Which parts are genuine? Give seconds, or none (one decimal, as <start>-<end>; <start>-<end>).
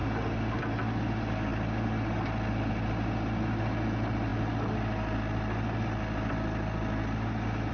0.0-7.7